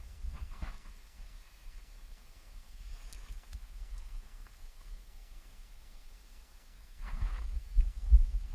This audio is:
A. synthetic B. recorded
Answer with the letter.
A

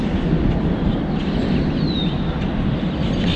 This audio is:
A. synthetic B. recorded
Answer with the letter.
B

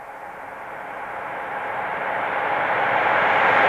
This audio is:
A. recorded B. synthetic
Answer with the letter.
A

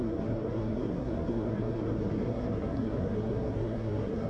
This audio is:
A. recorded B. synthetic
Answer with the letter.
B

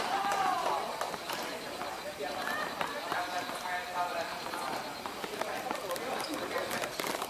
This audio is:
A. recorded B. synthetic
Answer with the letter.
A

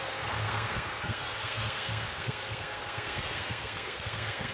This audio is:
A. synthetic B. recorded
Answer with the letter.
A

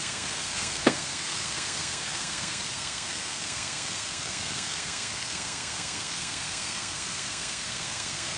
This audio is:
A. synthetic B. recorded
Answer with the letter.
A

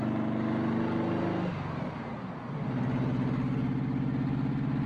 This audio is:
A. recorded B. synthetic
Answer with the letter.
A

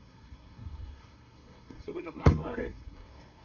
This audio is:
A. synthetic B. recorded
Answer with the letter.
A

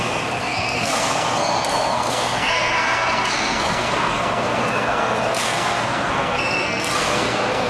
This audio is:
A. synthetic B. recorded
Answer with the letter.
A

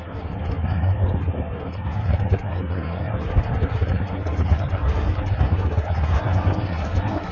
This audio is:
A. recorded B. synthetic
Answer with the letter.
B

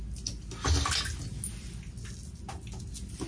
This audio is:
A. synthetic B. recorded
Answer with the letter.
B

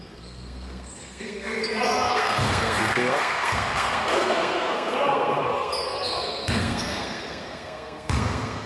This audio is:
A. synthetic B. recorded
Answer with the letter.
A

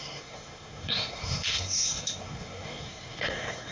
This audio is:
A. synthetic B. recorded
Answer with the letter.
A